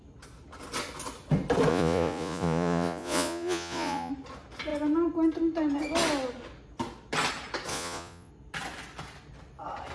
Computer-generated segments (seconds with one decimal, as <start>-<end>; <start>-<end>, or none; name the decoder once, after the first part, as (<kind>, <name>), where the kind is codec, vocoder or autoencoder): 1.7-4.1 (vocoder, Vocos); 7.7-8.3